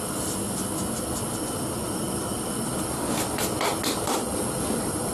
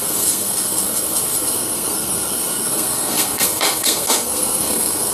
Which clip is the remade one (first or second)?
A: second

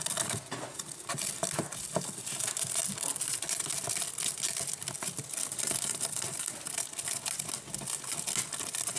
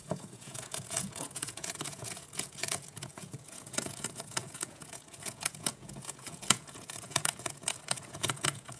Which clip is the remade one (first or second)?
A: second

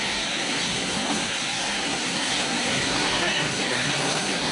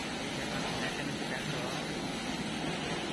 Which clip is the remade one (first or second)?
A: first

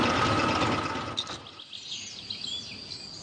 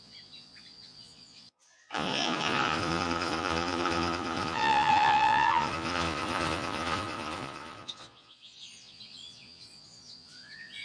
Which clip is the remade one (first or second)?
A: second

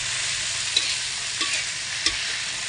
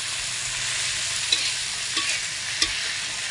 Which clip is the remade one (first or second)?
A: first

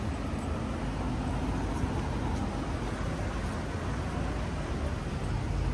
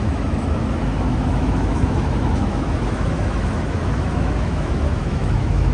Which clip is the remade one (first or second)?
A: second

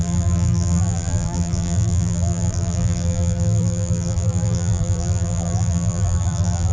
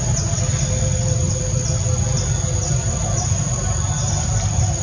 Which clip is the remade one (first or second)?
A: first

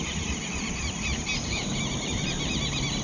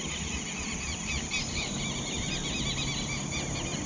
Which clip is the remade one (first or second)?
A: first